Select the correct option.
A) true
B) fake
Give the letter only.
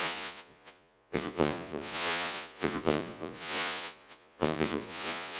B